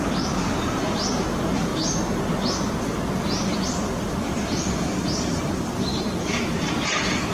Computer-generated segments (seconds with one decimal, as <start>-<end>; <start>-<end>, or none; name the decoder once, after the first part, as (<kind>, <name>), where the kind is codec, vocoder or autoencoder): 0.0-1.7 (vocoder, BigVGAN v2); 4.0-7.3